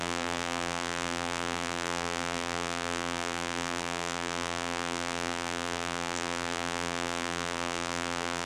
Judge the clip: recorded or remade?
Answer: remade